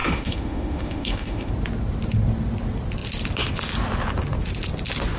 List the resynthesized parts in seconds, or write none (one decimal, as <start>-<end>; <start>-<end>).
0.0-1.5